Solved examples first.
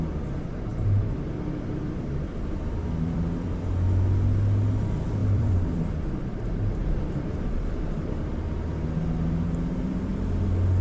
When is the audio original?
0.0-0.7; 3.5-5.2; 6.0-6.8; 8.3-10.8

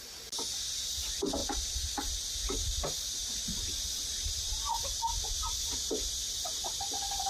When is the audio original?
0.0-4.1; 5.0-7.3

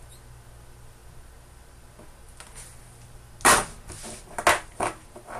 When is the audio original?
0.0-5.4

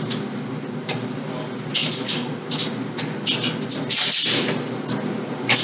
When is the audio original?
0.0-5.6